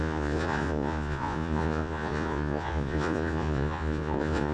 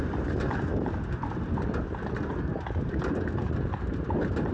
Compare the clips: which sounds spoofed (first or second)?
first